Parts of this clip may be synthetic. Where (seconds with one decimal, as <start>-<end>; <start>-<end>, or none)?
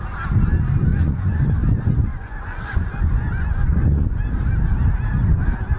0.9-1.5; 2.1-4.2